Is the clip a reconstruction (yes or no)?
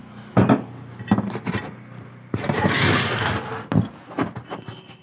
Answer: no